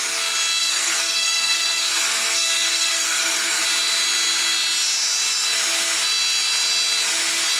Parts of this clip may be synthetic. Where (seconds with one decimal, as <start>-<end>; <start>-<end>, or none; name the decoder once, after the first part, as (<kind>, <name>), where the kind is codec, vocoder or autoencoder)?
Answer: 0.6-3.6 (codec, SNAC)